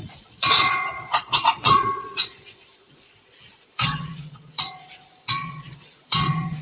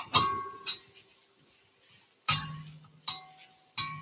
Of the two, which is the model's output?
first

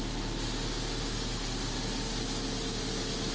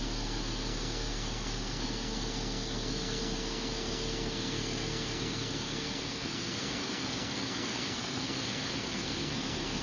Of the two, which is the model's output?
second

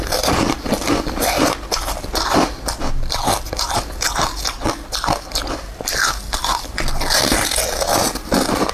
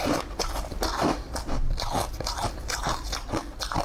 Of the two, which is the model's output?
second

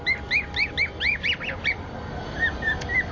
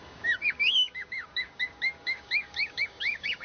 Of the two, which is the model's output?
second